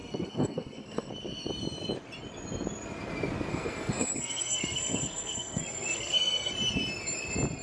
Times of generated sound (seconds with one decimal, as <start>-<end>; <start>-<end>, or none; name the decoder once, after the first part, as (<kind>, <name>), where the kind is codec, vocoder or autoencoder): 0.0-1.1 (codec, SNAC); 3.5-6.5